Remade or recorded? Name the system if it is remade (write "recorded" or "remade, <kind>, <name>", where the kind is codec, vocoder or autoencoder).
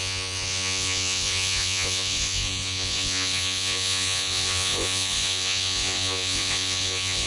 remade, vocoder, Vocos